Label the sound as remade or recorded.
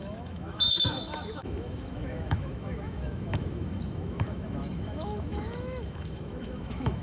remade